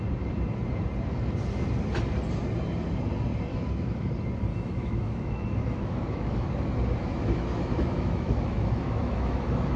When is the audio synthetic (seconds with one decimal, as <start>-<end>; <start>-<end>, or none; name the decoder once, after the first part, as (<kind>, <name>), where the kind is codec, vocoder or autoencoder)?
3.5-4.1 (autoencoder, DAC-VAE); 4.5-6.5; 7.0-9.8